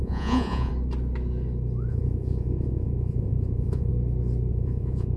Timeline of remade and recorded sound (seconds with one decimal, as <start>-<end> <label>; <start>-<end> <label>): 0.0-0.7 remade; 0.7-1.9 recorded; 1.9-3.9 remade; 3.9-4.5 recorded; 4.5-5.2 remade